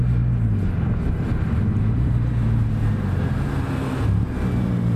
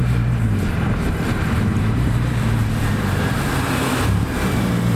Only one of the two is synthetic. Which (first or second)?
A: second